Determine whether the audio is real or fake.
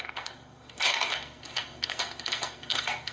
fake